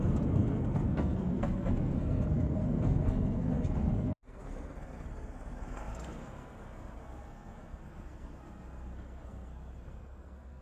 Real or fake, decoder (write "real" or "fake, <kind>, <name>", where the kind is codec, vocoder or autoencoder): fake, codec, SNAC